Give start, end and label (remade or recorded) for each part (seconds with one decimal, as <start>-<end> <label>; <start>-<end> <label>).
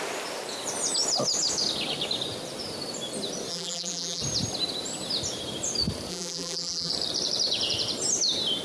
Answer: 0.0-3.5 recorded; 3.5-4.2 remade; 4.2-6.1 recorded; 6.1-6.9 remade; 6.9-8.6 recorded